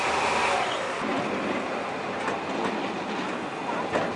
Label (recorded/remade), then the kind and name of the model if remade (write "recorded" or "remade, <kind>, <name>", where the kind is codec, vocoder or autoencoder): recorded